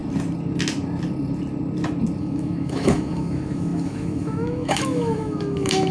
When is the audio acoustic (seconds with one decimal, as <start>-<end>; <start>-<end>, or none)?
0.0-2.2